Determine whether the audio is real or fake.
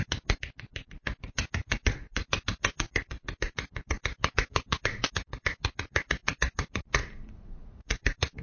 fake